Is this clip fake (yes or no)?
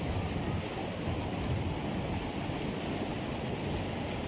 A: no